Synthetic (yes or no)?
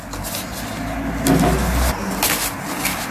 no